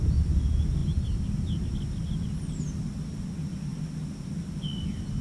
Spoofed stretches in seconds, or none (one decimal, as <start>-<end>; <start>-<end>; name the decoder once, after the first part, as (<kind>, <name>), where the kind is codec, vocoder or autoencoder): none